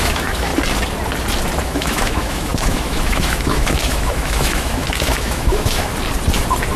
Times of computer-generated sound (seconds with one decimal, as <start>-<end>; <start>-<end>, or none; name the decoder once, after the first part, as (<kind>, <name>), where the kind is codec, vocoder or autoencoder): 0.0-0.5 (autoencoder, DAC-VAE); 1.6-5.9